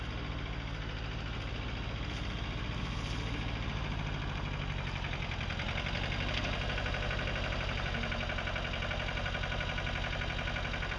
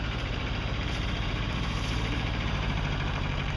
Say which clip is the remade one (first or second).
second